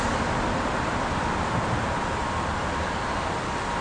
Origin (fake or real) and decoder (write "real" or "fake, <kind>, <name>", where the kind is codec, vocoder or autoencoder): real